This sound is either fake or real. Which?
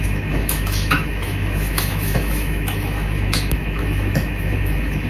fake